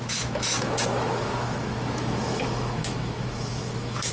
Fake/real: fake